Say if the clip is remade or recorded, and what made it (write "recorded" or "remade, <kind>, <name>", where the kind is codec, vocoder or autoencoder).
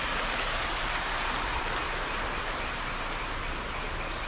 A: recorded